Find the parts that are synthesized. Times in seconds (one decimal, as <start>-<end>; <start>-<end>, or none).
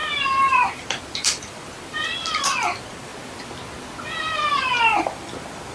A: 0.0-3.1; 4.2-5.7